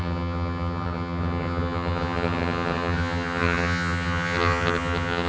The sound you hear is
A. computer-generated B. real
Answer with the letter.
A